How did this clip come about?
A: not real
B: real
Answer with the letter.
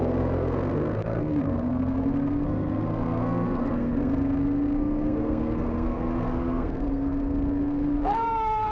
A